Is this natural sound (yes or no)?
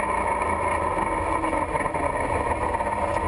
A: yes